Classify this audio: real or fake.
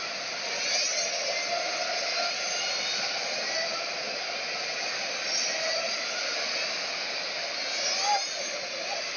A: real